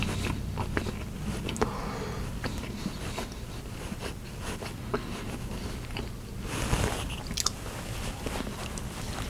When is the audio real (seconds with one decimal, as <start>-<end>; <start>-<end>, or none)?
0.0-9.3